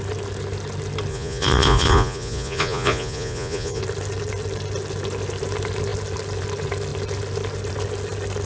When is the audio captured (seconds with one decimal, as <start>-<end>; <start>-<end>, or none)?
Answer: 0.0-1.1; 3.8-8.5